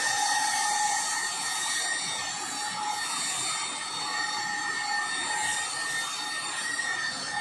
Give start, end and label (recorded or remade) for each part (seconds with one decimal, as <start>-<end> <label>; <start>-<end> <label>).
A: 0.0-5.5 remade; 5.5-6.5 recorded; 6.5-7.4 remade